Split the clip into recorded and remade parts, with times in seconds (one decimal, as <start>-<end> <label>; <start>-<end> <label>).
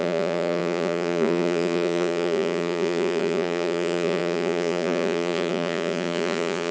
0.0-6.7 remade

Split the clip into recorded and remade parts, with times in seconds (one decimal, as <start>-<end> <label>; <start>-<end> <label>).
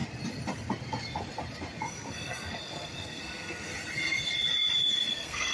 0.0-1.8 recorded; 1.8-3.7 remade; 3.7-5.1 recorded; 5.1-5.5 remade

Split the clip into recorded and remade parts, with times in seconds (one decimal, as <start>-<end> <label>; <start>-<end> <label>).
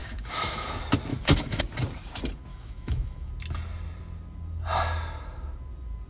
0.0-0.7 remade; 0.7-1.1 recorded; 1.1-1.6 remade; 1.6-2.5 recorded; 2.5-3.3 remade; 3.3-6.1 recorded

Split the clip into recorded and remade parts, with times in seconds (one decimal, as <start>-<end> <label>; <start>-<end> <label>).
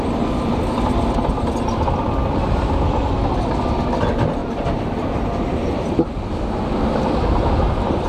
0.0-4.4 recorded; 4.4-8.1 remade